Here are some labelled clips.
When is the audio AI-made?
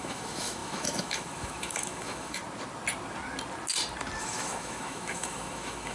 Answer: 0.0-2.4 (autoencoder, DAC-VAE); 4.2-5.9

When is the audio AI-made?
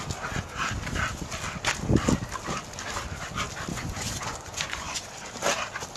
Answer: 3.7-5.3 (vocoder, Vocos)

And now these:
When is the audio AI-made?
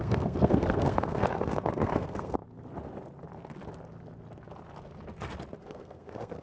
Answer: 0.0-2.4 (codec, SNAC); 5.6-6.4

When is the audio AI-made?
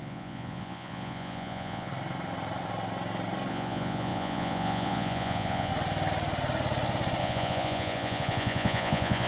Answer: 0.0-1.9 (vocoder, Vocos); 3.5-5.7; 7.2-9.3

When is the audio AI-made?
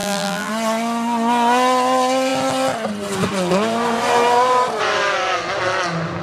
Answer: 0.0-0.5 (vocoder, BigVGAN v2)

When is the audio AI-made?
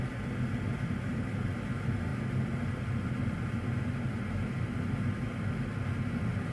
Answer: none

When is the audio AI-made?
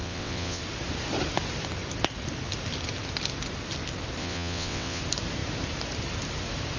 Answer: 0.0-0.6 (vocoder, WaveNeXt); 4.2-5.0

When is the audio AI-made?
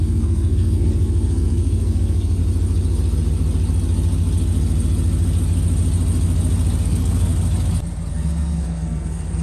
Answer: 0.0-2.4 (codec, SNAC); 6.8-7.3; 8.1-9.4